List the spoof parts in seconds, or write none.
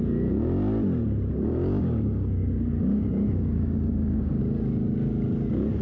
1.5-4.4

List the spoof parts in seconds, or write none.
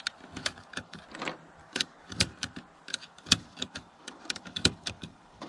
0.4-1.0; 1.6-2.3; 2.9-5.5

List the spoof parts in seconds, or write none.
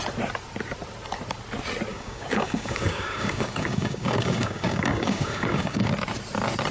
1.9-5.9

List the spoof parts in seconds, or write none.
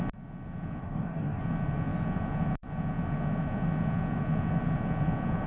0.8-1.4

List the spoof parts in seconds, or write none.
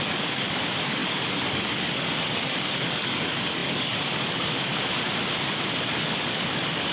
0.0-4.7; 5.9-6.9